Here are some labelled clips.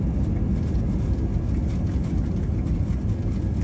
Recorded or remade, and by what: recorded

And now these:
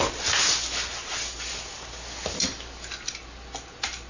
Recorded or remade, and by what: recorded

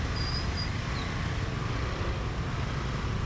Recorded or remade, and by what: recorded